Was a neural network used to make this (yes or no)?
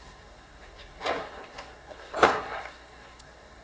yes